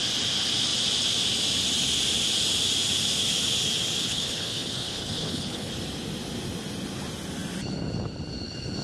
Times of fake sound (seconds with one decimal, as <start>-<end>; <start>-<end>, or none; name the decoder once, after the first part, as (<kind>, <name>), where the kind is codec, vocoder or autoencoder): 4.0-5.7 (codec, HILCodec)